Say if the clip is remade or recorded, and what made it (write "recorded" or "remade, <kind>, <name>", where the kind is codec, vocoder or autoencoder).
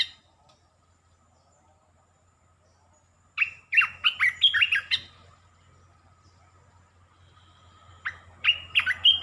recorded